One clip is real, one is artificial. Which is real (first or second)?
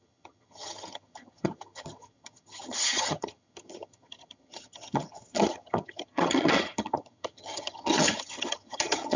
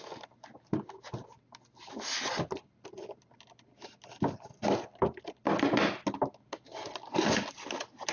second